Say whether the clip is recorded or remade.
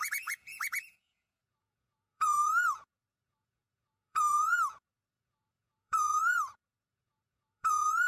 remade